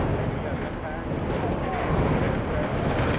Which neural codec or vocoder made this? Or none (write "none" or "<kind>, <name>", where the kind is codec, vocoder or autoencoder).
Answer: none